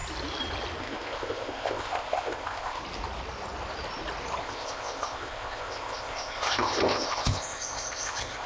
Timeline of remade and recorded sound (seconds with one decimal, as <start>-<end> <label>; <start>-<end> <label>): 0.0-0.8 recorded; 0.8-2.8 remade; 2.8-4.4 recorded; 4.4-8.5 remade